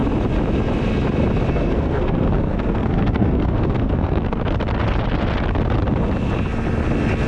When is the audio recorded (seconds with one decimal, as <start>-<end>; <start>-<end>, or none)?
0.0-1.5; 4.4-7.3